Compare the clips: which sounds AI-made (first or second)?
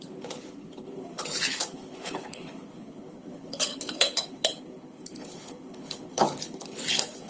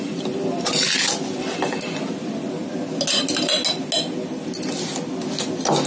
first